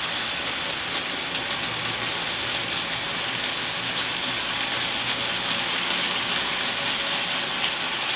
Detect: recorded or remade recorded